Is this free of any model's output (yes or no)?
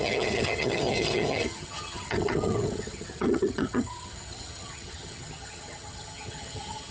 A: no